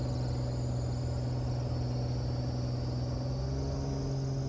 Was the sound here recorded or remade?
recorded